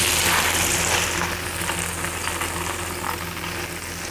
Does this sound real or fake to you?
real